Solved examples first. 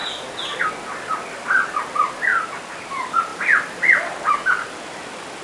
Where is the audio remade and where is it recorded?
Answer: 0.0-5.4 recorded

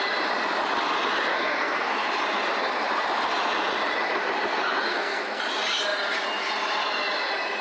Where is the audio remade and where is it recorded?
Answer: 0.0-1.3 recorded; 1.3-2.1 remade; 2.1-4.9 recorded; 4.9-5.4 remade; 5.4-7.6 recorded

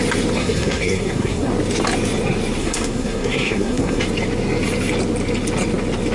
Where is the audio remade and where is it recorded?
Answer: 0.0-0.4 recorded; 0.4-1.5 remade; 1.5-2.6 recorded; 2.6-4.0 remade; 4.0-6.1 recorded

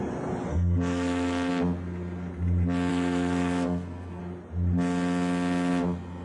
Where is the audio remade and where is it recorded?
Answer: 0.0-0.5 recorded; 0.5-1.5 remade; 1.5-2.9 recorded; 2.9-4.2 remade; 4.2-6.2 recorded